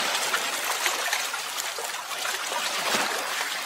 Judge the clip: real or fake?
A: real